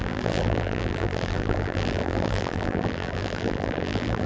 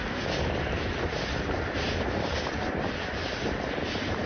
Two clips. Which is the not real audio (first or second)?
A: first